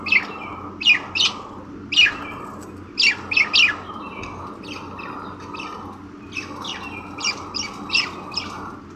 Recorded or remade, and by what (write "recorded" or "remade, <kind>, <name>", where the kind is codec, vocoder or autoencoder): recorded